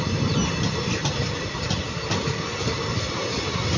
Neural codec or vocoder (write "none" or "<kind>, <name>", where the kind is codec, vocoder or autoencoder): none